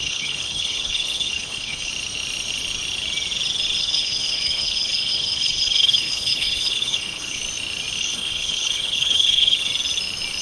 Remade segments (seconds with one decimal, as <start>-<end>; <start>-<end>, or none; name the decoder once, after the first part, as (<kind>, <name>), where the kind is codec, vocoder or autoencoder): 0.0-1.9 (codec, HILCodec); 3.8-7.4; 8.0-9.7